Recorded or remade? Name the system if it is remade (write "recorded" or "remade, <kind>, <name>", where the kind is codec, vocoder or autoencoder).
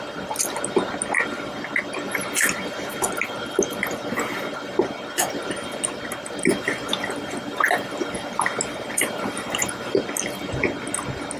recorded